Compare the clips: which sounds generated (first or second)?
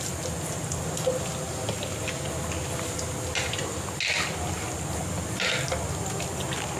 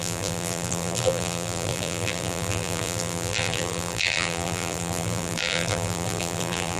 second